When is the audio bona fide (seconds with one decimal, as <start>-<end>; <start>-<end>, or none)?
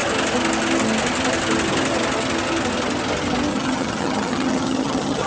0.0-3.5